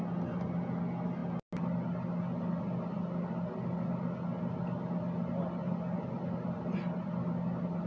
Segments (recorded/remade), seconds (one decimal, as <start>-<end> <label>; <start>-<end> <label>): 0.0-7.9 recorded